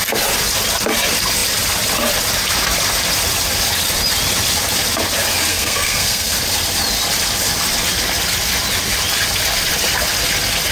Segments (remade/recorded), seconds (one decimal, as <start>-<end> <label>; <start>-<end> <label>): 0.0-5.5 recorded; 5.5-6.3 remade; 6.3-10.7 recorded